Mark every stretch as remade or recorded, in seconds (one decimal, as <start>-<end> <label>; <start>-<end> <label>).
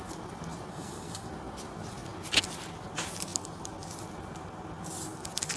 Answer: 0.0-0.7 recorded; 0.7-1.3 remade; 1.3-5.6 recorded